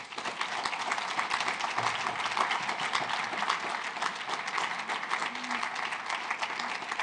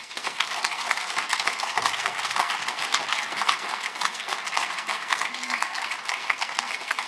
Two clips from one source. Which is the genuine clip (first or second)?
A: first